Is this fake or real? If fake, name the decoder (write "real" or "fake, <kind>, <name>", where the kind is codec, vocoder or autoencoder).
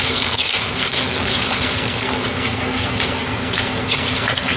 fake, codec, SNAC